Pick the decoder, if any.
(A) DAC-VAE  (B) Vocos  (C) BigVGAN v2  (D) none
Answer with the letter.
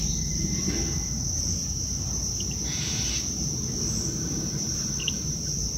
C